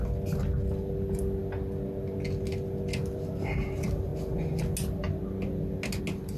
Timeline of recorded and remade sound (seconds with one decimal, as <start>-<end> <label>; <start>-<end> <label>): 0.0-6.4 recorded